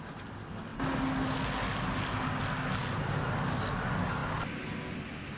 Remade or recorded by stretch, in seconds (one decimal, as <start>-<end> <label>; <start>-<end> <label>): 0.0-5.4 recorded